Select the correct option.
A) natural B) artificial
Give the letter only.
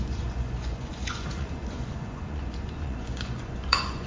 B